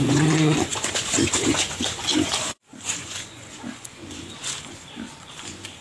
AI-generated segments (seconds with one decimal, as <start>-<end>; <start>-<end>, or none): 0.0-5.8